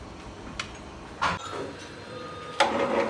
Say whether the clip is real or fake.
real